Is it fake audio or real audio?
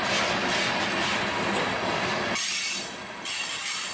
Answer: real